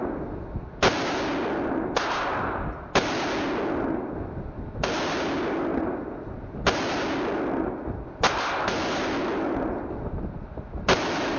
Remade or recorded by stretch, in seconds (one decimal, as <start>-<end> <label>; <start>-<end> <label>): 0.0-11.4 recorded